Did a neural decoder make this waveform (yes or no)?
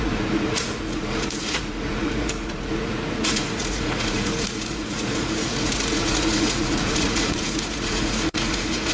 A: yes